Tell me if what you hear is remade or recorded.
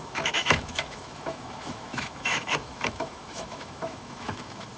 remade